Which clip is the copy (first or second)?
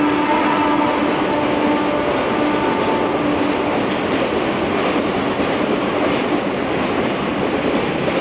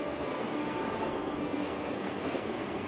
second